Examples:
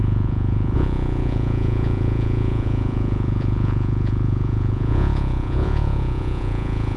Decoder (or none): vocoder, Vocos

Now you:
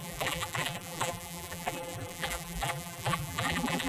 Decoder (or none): vocoder, BigVGAN v2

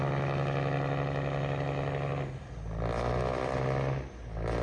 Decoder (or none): none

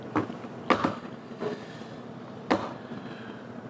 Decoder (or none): none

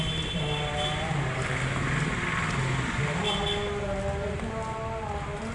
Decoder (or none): none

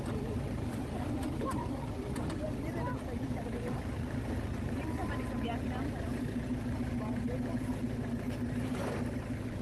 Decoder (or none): vocoder, BigVGAN v2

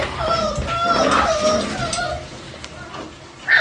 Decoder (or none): none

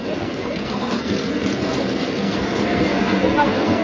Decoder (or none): codec, SNAC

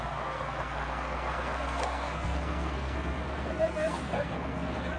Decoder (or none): codec, SNAC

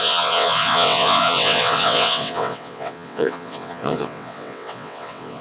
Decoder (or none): vocoder, WaveNeXt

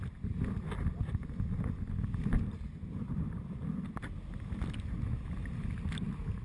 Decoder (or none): none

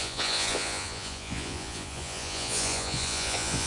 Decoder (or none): vocoder, Vocos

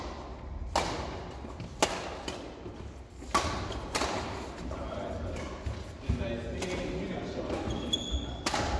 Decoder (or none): none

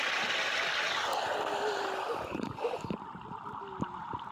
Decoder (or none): none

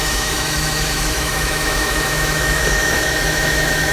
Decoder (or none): autoencoder, DAC-VAE